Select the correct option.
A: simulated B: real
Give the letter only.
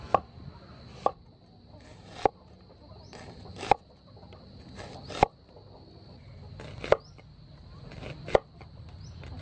B